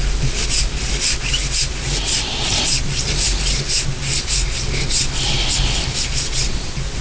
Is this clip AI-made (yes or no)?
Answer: no